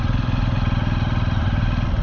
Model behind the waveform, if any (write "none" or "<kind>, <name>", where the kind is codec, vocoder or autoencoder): none